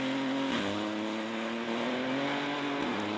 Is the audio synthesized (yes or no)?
no